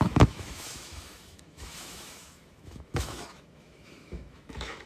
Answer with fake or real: fake